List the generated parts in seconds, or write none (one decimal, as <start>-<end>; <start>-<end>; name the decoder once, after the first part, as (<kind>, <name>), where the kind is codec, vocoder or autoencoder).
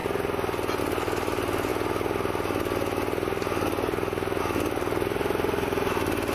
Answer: 0.8-1.7 (vocoder, BigVGAN v2); 4.4-6.3